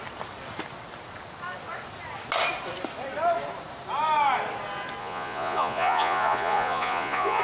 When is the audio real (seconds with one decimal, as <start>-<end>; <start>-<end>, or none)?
0.0-5.0